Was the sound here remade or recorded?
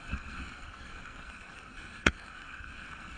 remade